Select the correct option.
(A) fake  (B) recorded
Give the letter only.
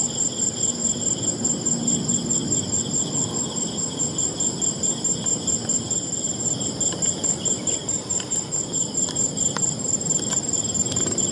B